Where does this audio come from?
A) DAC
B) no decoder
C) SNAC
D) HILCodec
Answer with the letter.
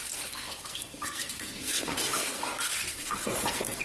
C